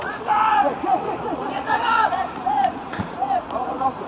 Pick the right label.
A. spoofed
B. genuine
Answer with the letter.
A